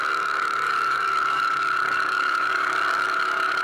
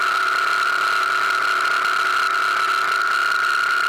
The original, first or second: second